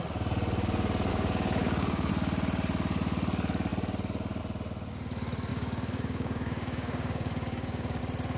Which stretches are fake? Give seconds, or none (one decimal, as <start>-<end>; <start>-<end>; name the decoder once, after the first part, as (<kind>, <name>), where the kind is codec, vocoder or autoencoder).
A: 1.1-2.1 (codec, DAC); 5.5-8.0

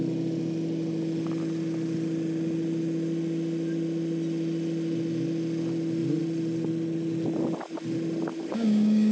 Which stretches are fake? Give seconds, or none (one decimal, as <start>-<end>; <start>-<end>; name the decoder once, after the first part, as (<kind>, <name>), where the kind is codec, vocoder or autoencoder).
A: 8.5-9.1 (codec, DAC)

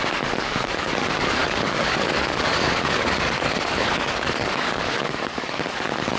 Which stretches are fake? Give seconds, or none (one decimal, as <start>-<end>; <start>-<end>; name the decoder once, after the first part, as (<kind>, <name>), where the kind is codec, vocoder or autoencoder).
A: 0.0-6.2 (codec, DAC)

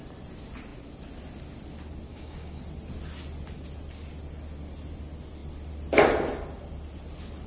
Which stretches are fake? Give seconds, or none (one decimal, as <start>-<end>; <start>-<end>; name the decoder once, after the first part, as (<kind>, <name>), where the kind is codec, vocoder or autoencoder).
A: 2.1-2.6 (codec, DAC)

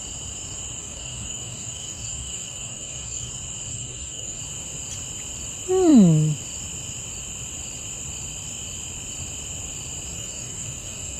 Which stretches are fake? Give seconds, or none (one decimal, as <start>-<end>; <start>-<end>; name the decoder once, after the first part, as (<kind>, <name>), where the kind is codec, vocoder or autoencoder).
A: 0.8-3.3 (codec, DAC); 3.7-4.4; 10.1-11.2

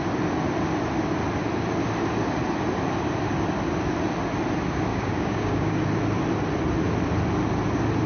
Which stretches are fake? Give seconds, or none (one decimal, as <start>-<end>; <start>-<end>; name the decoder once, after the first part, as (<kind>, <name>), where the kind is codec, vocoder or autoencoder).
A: 4.9-5.8 (codec, DAC)